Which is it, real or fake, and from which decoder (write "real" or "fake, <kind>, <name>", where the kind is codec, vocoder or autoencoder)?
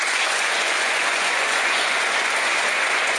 fake, vocoder, Vocos